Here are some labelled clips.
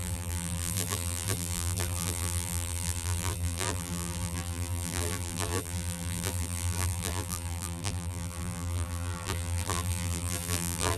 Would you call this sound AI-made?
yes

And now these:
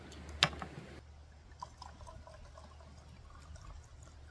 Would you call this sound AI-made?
no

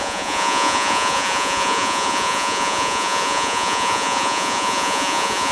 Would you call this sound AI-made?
yes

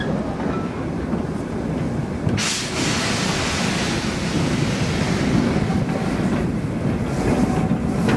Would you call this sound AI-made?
no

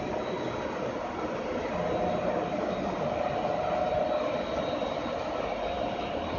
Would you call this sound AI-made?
no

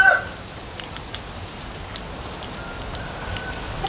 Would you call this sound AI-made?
no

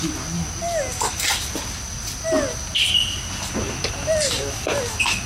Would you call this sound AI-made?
no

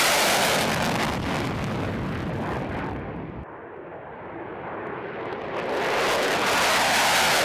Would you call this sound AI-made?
no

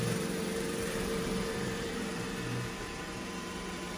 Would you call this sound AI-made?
yes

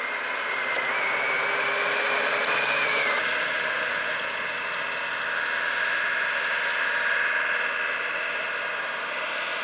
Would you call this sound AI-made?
no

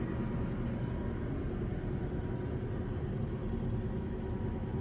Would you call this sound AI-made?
no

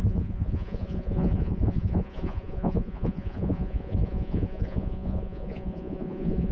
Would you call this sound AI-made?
yes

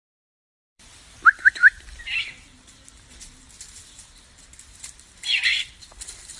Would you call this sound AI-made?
yes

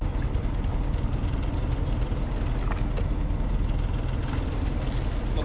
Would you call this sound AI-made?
no